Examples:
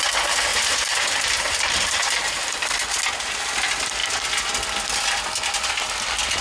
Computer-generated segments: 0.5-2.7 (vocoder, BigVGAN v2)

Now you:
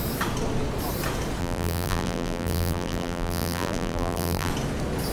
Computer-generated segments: 1.4-4.5 (vocoder, BigVGAN v2)

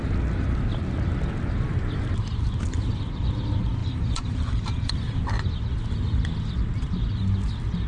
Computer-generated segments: 3.8-4.9 (vocoder, BigVGAN v2)

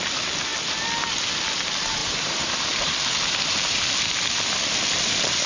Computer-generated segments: 2.0-2.7 (vocoder, BigVGAN v2)

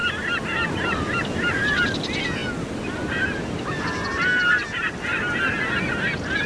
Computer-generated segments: 0.0-1.9 (vocoder, BigVGAN v2)

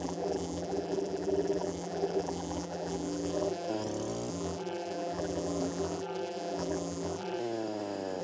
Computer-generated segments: 0.0-3.7 (vocoder, BigVGAN v2); 4.3-7.4

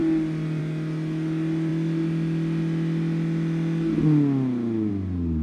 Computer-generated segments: none

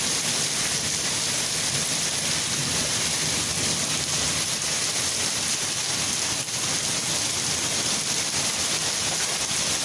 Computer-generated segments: none